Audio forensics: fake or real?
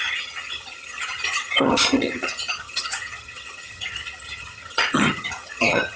fake